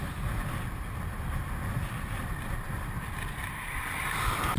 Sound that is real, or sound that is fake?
fake